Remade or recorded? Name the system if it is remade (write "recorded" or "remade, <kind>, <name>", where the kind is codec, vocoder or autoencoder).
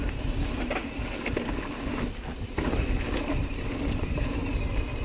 recorded